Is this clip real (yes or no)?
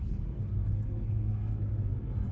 no